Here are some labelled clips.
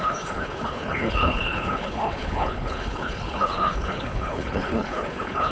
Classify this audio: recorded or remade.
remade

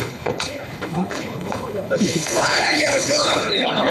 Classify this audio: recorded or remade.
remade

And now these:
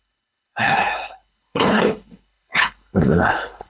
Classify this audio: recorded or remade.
remade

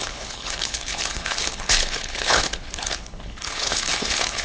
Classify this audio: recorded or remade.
remade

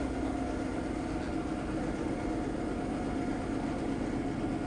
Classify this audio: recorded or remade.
recorded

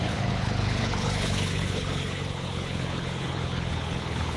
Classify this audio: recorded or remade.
remade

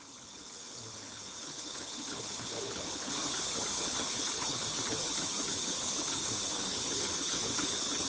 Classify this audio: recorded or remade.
remade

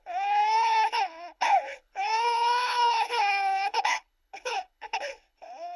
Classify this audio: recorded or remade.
remade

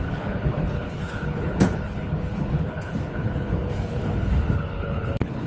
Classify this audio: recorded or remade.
remade